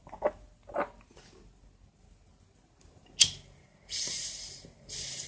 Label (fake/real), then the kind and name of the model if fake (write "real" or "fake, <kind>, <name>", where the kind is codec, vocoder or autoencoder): real